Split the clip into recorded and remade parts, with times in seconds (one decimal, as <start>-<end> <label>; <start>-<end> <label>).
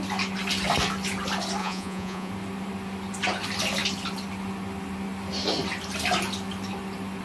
0.0-1.6 recorded; 1.6-2.3 remade; 2.3-7.2 recorded